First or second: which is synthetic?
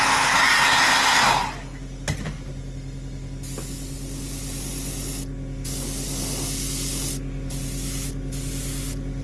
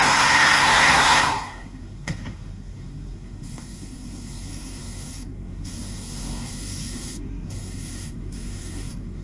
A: second